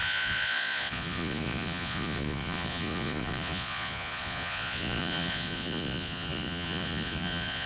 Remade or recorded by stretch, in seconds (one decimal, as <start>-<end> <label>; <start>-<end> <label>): 0.0-7.7 remade